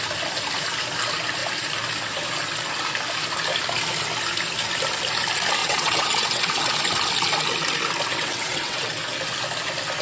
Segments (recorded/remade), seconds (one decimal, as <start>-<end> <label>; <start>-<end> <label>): 0.0-5.6 recorded; 5.6-6.6 remade; 6.6-8.1 recorded; 8.1-8.9 remade; 8.9-10.0 recorded